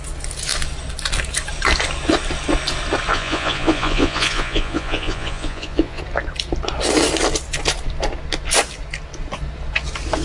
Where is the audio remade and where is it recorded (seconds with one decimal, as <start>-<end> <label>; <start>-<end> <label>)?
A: 0.0-3.1 recorded; 3.1-6.0 remade; 6.0-10.2 recorded